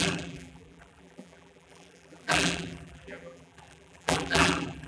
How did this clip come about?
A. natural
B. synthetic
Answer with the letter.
B